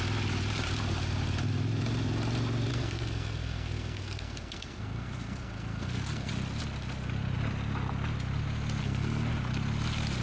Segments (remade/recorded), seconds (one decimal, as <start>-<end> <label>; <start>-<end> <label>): 0.0-2.7 recorded; 2.7-6.3 remade; 6.3-8.8 recorded; 8.8-9.3 remade; 9.3-10.2 recorded